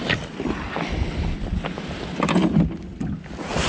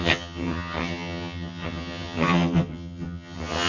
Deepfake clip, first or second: second